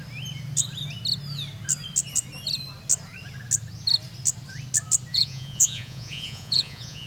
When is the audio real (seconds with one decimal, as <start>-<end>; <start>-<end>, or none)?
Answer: 0.0-5.1